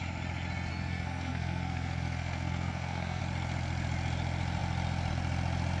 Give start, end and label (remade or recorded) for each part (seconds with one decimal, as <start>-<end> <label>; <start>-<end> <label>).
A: 0.0-0.7 recorded; 0.7-3.2 remade; 3.2-5.8 recorded